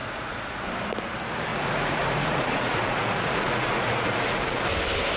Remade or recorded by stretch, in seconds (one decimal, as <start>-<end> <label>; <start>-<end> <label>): 0.0-0.6 remade; 0.6-1.5 recorded; 1.5-4.6 remade; 4.6-5.2 recorded